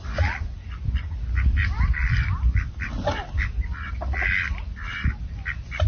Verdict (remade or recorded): recorded